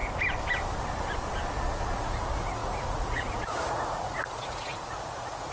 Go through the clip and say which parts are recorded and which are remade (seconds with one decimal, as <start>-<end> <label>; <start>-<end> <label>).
0.0-1.5 recorded; 1.5-5.5 remade